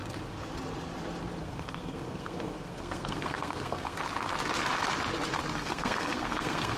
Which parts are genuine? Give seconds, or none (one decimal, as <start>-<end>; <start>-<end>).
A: 0.0-1.4; 4.0-5.6